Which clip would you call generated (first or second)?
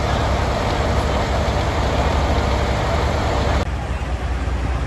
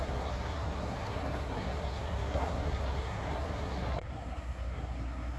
second